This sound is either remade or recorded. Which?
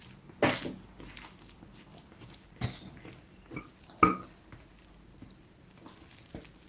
recorded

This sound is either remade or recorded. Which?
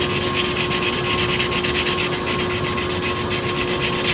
recorded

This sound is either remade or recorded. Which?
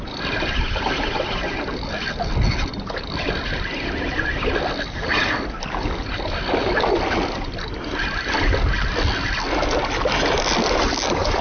recorded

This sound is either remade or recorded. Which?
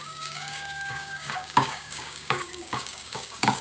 remade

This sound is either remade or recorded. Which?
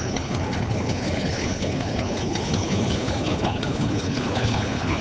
remade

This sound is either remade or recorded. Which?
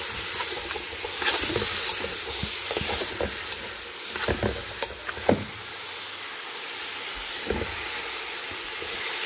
recorded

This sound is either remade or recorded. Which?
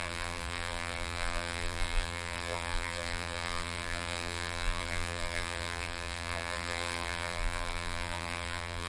remade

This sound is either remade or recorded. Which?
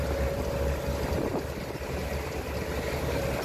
recorded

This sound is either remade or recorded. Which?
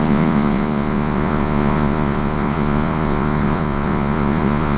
remade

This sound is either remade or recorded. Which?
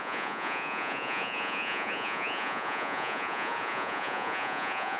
remade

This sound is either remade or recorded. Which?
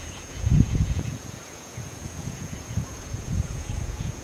remade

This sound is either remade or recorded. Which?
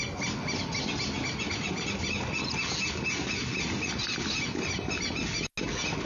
recorded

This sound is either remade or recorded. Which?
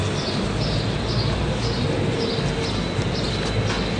recorded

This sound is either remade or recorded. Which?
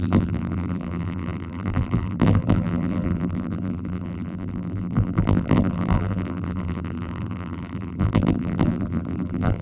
remade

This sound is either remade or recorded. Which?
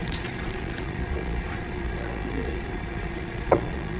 remade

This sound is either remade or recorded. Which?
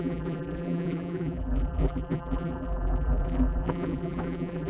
remade